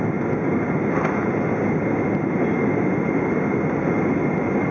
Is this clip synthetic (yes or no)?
no